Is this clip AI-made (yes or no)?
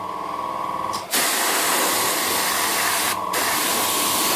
no